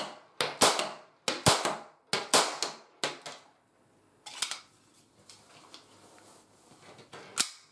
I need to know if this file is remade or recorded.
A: recorded